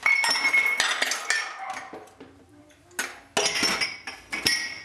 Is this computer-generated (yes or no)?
no